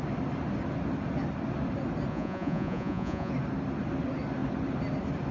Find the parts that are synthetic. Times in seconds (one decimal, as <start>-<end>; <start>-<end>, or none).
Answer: 2.1-3.3